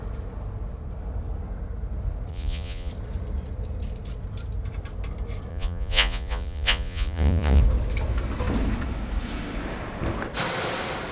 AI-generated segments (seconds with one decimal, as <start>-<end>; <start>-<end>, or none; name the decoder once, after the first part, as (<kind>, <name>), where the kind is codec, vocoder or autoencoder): 2.3-2.9 (vocoder, Vocos); 5.5-7.6